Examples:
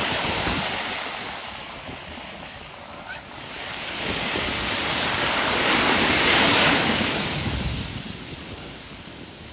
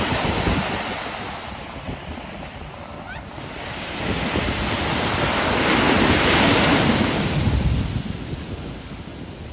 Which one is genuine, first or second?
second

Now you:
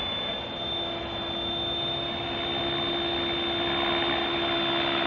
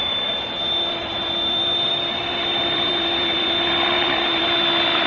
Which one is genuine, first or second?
first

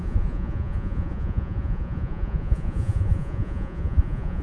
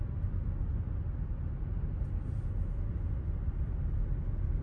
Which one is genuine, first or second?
second